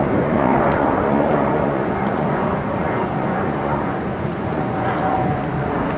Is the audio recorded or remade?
remade